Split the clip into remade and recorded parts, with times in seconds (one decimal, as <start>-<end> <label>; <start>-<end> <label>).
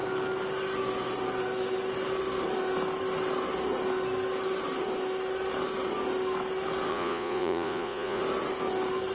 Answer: 0.0-6.9 recorded; 6.9-8.2 remade; 8.2-9.1 recorded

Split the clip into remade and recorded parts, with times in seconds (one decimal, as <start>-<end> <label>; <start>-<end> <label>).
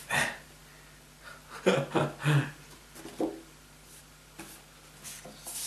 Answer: 0.0-5.7 recorded